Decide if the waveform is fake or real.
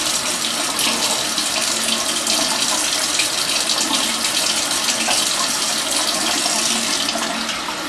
real